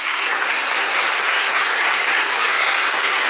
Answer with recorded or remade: remade